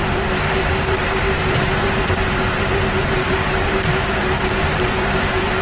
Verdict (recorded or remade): remade